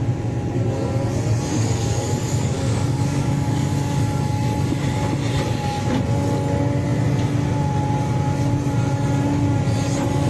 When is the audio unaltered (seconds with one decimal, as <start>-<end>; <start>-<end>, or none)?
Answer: 0.0-1.5; 3.7-10.3